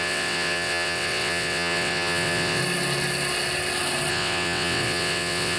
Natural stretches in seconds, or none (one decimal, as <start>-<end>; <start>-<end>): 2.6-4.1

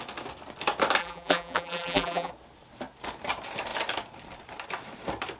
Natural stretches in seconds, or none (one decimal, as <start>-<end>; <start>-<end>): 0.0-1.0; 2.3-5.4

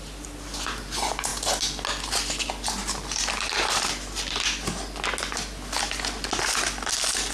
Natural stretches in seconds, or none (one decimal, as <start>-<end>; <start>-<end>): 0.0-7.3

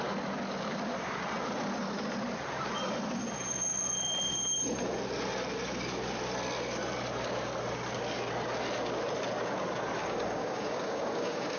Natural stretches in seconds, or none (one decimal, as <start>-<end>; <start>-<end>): 0.0-10.0

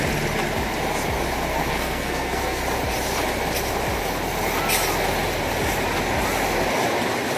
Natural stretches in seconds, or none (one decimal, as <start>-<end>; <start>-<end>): 0.0-1.5; 2.6-7.4

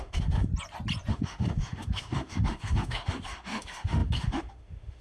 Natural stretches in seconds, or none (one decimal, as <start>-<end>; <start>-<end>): 0.5-1.1

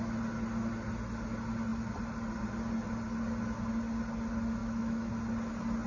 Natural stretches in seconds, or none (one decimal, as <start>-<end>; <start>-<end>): 0.0-4.6; 5.1-5.9